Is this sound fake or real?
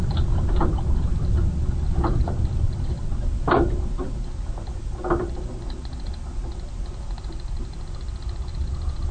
real